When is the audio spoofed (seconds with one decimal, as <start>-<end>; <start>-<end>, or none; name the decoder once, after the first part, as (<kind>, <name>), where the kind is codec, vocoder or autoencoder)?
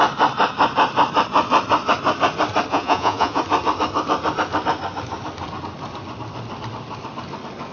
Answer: 2.7-3.4 (vocoder, Vocos)